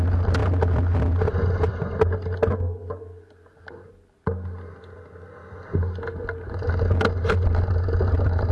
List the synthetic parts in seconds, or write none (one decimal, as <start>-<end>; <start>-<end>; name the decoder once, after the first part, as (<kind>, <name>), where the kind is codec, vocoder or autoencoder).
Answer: none